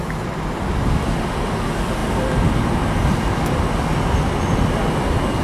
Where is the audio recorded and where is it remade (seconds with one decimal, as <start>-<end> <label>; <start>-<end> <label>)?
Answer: 0.0-5.4 recorded